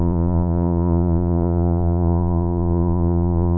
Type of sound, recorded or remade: remade